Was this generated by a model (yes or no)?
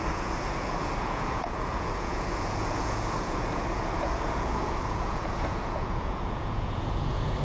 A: yes